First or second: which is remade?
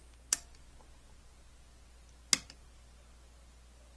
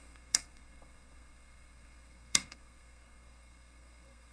second